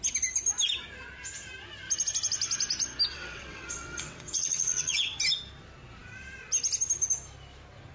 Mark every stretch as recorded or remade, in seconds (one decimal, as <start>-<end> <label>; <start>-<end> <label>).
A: 0.0-3.1 recorded; 3.1-5.2 remade; 5.2-7.9 recorded